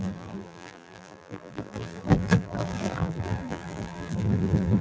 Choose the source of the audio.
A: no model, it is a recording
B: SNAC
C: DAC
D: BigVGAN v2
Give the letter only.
D